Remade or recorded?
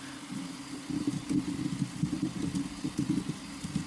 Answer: recorded